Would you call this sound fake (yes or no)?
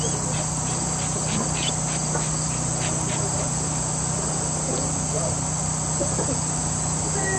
no